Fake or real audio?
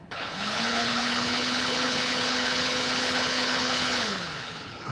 fake